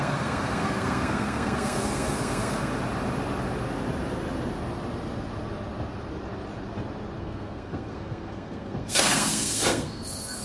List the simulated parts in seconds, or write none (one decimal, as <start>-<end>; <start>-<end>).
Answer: 0.0-2.7; 7.2-10.4